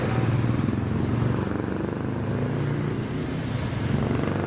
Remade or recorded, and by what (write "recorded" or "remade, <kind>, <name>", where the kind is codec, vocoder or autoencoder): recorded